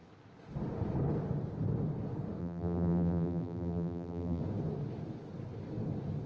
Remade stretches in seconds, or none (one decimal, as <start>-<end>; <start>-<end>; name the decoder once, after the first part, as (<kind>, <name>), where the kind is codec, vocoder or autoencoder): 2.4-4.4 (vocoder, BigVGAN v2)